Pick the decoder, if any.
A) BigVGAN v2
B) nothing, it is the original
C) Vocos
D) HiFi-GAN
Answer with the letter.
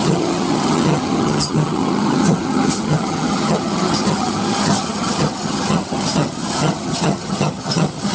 D